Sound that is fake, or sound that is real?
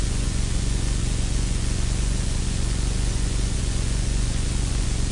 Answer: fake